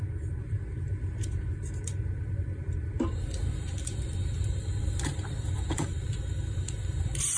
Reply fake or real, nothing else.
fake